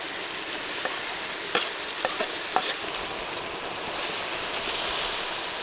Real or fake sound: real